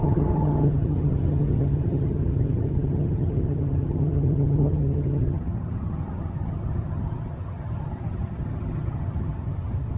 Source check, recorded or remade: remade